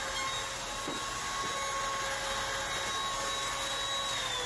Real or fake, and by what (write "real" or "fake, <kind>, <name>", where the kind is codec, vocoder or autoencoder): real